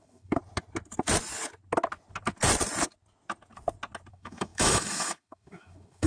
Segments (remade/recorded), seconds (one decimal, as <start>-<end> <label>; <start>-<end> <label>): 0.0-0.4 remade; 0.4-4.1 recorded; 4.1-6.1 remade